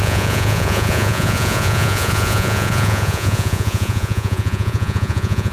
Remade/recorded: remade